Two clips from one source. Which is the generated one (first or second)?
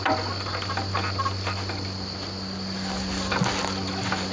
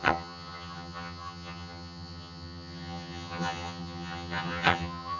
second